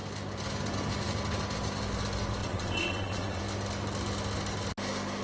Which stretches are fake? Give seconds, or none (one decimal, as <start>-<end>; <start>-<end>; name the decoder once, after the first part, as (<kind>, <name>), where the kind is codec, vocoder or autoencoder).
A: 2.4-3.4 (vocoder, WaveNeXt)